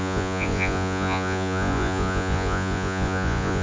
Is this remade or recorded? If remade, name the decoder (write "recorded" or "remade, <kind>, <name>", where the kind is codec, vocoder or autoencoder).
remade, vocoder, Vocos